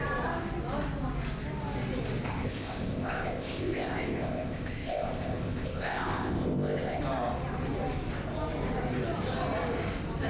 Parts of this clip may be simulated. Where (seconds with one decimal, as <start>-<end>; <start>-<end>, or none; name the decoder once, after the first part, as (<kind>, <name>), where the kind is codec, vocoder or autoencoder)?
2.3-7.0 (codec, ZipCodec)